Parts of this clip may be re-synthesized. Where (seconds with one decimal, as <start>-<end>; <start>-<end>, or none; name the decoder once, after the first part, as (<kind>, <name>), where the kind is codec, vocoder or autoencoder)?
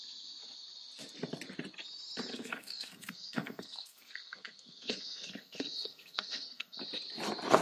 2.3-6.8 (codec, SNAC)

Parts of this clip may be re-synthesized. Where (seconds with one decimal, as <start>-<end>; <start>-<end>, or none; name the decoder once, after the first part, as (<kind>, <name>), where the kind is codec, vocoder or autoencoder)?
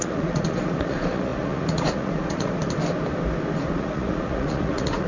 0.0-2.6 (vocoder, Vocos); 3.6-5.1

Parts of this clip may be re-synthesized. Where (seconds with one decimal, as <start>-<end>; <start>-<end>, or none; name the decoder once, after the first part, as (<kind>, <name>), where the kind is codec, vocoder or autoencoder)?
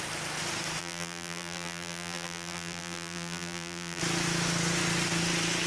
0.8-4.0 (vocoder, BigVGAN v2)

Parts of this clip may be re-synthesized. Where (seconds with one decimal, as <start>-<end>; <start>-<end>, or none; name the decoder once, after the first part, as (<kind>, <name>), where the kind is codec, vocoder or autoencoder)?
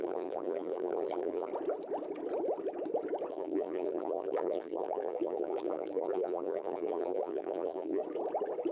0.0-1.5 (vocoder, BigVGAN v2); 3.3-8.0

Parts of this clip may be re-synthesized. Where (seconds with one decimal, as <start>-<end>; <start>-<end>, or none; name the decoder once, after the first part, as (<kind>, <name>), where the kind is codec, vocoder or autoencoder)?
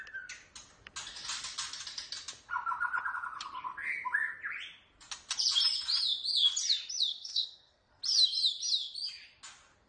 7.1-7.9 (codec, SNAC)